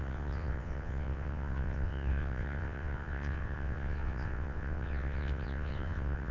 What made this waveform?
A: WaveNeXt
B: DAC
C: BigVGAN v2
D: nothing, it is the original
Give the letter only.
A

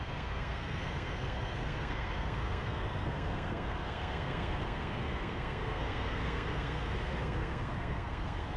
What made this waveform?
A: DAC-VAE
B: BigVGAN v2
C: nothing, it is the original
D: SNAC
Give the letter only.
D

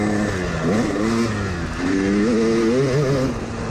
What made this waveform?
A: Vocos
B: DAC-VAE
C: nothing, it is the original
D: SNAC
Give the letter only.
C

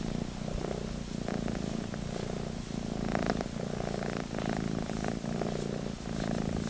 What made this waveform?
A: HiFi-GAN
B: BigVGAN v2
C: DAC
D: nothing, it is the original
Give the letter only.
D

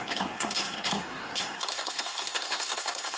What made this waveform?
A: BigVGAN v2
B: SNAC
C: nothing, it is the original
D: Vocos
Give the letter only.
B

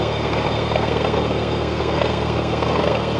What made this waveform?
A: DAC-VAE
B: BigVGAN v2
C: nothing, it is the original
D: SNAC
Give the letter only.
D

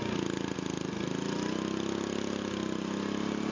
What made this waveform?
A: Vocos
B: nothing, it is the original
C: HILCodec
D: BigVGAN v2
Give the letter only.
B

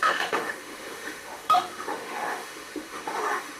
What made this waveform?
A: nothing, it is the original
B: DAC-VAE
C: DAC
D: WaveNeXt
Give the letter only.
B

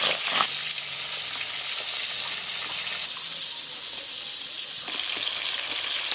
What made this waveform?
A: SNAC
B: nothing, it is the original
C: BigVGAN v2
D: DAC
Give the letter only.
B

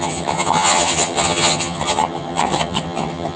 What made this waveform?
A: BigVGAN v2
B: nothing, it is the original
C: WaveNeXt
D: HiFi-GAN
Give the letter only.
D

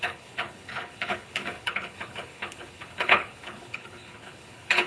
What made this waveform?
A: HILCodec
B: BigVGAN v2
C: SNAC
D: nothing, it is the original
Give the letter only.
A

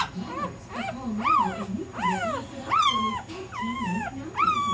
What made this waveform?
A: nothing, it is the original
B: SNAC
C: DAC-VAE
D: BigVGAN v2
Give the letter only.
A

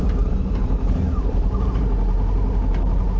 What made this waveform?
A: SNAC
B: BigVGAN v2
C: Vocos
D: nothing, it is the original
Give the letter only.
D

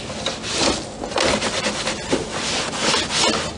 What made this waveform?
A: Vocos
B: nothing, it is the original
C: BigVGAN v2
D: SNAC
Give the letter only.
B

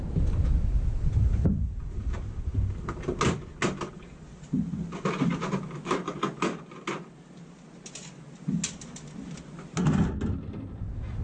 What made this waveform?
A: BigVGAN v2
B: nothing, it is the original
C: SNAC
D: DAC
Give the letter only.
B